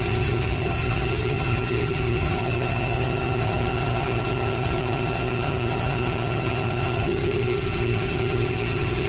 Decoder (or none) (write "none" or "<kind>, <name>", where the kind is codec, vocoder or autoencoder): vocoder, HiFi-GAN